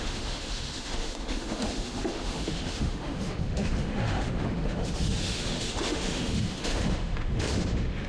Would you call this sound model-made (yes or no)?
yes